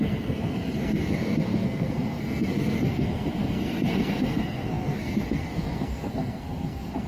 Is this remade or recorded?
remade